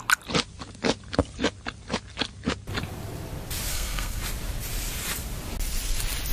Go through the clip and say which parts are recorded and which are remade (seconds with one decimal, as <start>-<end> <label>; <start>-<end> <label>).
0.0-3.7 recorded; 3.7-4.2 remade; 4.2-6.3 recorded